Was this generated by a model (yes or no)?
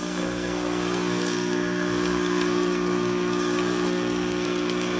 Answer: yes